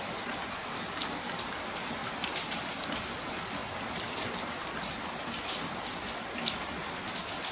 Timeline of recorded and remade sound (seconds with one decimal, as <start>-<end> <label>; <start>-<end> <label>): 0.0-7.5 recorded